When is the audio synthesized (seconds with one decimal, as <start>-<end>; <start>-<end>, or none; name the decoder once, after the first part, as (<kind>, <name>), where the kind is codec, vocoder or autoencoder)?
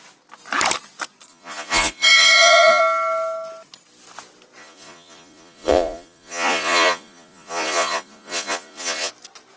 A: 1.3-2.8 (vocoder, Vocos); 4.6-9.1